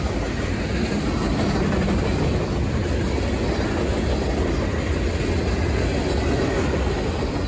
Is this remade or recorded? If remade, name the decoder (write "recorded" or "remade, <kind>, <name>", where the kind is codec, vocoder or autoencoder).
recorded